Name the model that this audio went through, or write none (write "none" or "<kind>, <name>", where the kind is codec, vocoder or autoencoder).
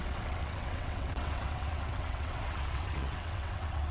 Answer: vocoder, WaveNeXt